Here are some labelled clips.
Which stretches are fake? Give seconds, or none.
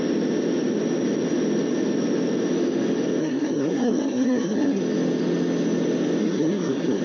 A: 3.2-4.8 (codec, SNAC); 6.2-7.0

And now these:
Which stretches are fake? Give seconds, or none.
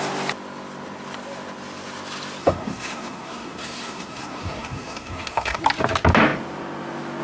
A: 2.4-5.6 (codec, SNAC)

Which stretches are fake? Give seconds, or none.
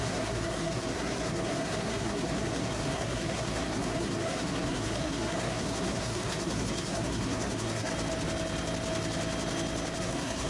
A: 0.0-7.9 (codec, SNAC); 10.0-10.5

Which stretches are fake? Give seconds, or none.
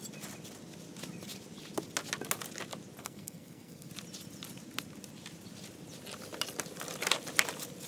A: 3.0-3.9 (codec, SNAC)